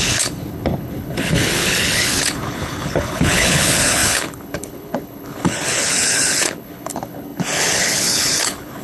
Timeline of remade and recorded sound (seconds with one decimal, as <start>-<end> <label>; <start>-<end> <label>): 0.0-8.8 remade